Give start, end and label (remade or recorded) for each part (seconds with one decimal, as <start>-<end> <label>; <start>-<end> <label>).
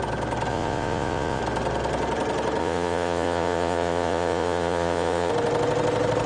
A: 0.0-0.5 recorded; 0.5-1.4 remade; 1.4-2.6 recorded; 2.6-5.3 remade; 5.3-6.3 recorded